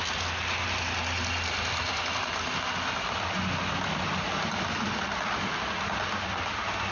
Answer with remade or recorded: recorded